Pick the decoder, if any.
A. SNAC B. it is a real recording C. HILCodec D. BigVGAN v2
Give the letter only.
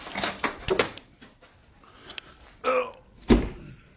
B